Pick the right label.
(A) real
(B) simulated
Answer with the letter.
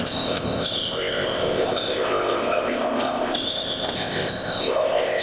B